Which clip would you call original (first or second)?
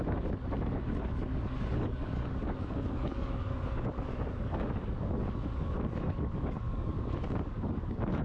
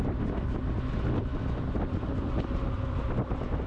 second